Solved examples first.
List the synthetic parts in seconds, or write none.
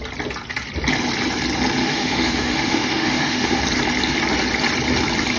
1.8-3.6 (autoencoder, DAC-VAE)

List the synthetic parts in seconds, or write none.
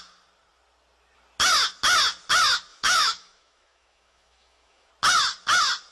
2.7-4.9 (autoencoder, DAC-VAE)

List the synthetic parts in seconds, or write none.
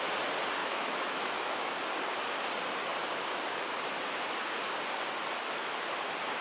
0.6-1.7 (autoencoder, DAC-VAE)